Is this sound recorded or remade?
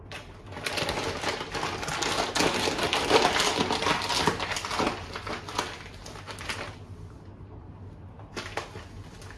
recorded